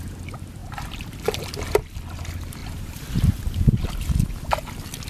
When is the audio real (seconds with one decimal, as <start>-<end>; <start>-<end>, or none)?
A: 0.0-0.6; 1.4-2.6; 3.9-5.1